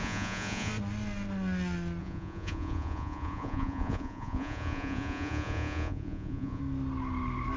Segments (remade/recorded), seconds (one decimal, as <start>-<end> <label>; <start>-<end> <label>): 0.0-0.7 remade; 0.7-2.0 recorded; 2.0-6.6 remade; 6.6-7.6 recorded